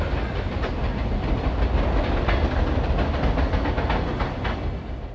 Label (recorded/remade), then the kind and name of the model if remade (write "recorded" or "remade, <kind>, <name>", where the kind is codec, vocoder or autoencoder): recorded